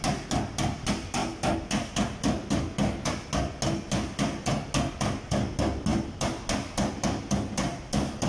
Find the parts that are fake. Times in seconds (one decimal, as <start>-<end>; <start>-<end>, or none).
none